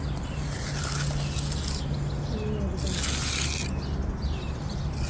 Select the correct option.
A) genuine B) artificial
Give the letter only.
A